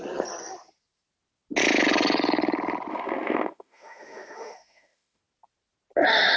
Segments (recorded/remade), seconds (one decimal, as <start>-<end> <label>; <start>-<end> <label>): 0.0-2.9 recorded; 2.9-5.2 remade; 5.2-6.4 recorded